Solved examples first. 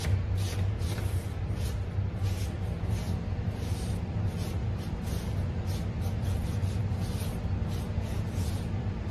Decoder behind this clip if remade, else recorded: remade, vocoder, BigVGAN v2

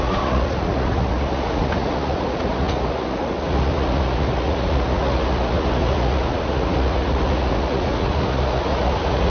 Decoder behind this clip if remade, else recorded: remade, vocoder, Vocos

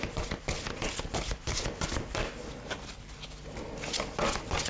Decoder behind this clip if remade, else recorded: recorded